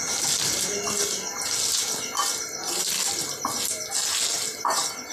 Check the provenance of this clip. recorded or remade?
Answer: recorded